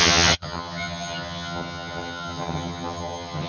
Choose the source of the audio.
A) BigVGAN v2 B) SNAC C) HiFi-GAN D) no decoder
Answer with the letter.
C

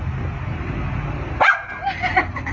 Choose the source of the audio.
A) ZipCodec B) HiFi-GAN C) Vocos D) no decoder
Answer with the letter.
D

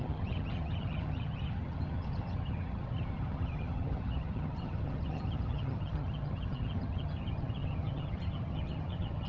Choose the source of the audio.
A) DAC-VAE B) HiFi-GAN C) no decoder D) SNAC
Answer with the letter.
B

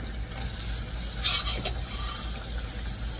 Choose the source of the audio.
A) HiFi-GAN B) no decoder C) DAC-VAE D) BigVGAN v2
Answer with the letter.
B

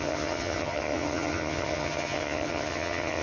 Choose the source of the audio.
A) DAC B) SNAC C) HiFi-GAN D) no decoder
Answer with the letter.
C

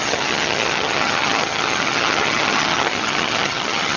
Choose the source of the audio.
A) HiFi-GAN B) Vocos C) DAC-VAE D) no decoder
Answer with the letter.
A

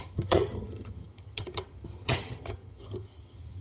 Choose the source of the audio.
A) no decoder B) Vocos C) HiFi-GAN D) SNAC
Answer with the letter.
C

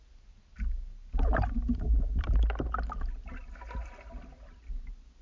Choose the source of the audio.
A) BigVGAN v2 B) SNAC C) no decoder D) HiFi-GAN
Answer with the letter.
C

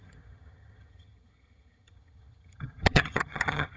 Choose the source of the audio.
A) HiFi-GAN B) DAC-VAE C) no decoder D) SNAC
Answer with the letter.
A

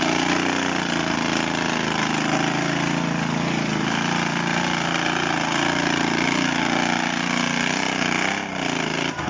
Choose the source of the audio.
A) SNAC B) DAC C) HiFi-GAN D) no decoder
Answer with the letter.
D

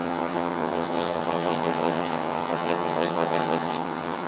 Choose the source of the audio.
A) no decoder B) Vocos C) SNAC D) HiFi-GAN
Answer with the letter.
D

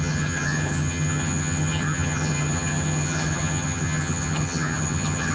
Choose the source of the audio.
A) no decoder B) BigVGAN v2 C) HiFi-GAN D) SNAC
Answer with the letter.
C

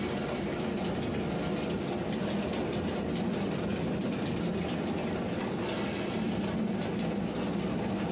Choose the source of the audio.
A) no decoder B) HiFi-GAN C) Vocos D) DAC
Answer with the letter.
A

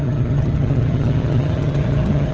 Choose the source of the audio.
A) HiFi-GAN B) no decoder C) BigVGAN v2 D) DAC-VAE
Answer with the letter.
A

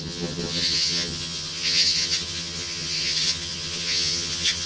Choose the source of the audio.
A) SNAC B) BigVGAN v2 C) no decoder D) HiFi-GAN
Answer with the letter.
D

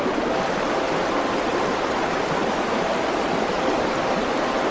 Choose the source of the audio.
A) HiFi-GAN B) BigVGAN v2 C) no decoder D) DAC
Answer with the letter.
C